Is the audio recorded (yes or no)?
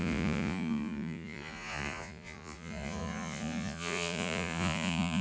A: no